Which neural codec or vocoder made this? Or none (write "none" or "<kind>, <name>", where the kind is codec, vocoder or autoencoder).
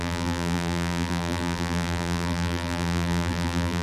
vocoder, BigVGAN v2